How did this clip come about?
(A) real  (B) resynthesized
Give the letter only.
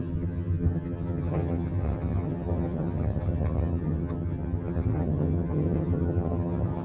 B